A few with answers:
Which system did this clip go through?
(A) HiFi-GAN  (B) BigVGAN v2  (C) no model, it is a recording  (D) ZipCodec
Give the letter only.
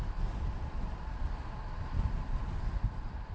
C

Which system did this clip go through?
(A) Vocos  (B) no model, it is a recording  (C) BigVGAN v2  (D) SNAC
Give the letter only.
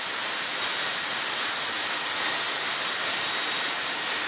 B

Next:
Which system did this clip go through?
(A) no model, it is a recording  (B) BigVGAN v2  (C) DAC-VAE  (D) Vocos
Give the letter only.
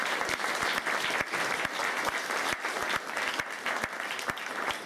A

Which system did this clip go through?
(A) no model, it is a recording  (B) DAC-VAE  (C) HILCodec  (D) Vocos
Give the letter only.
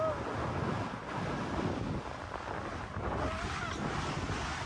A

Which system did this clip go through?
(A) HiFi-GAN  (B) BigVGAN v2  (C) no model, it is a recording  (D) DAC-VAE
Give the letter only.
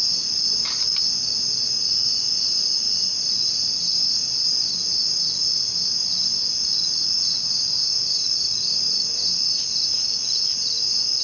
C